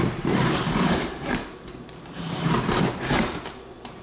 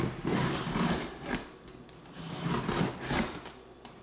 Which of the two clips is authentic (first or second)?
second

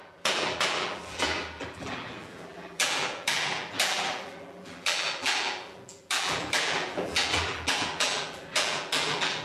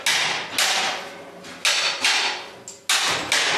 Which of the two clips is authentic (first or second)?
second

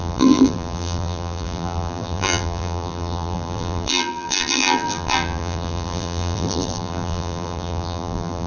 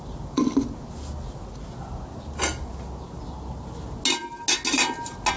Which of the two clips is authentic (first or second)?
second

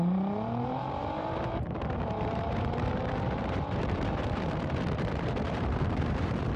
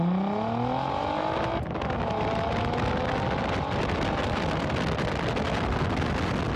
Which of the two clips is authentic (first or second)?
second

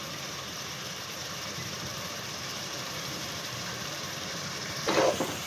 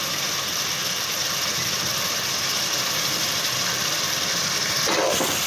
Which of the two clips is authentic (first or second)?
second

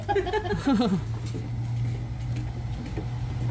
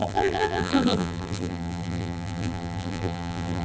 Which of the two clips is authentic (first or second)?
first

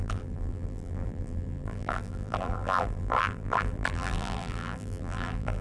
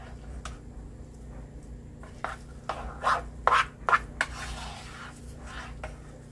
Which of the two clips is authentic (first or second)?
second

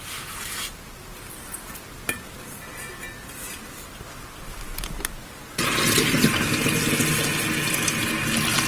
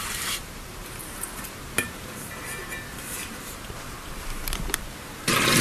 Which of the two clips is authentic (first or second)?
first